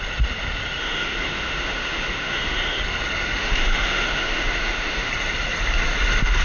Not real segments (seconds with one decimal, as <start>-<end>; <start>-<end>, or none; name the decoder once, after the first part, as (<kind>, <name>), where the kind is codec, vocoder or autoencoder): 0.8-2.8 (autoencoder, DAC-VAE); 3.4-5.1